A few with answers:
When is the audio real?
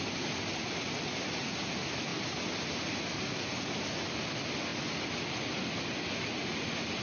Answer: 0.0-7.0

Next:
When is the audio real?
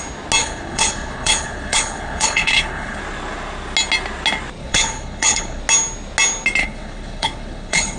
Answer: 0.0-0.4; 3.0-4.6; 5.6-6.6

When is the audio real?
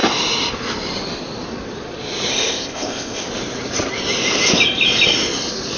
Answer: 0.0-2.3; 3.2-5.8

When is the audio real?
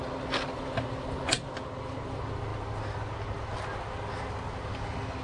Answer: 0.0-5.2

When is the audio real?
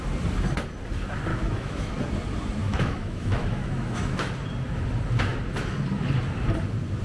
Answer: 0.0-1.3; 1.9-2.6; 4.3-7.0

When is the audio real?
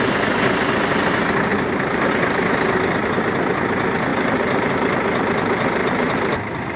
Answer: 0.0-1.5; 2.1-4.1; 4.7-5.8